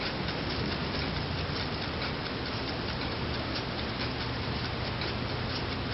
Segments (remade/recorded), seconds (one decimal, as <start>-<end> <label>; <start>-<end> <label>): 0.0-0.8 recorded; 0.8-3.0 remade; 3.0-5.9 recorded

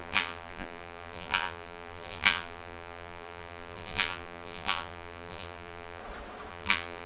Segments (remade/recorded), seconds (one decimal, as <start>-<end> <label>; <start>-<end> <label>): 0.0-6.0 remade; 6.0-6.5 recorded; 6.5-7.1 remade